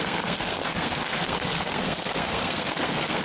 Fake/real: fake